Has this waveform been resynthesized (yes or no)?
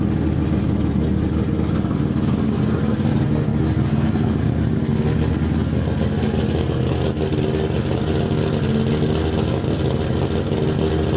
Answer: no